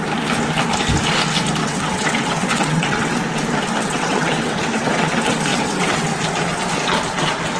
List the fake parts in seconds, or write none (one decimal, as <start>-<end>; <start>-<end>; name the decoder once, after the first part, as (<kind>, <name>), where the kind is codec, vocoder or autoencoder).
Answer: 1.6-3.1 (vocoder, WaveNeXt); 3.8-5.1; 5.5-6.1